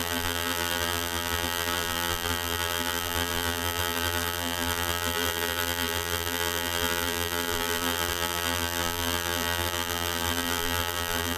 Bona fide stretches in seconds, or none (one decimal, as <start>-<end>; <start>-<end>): none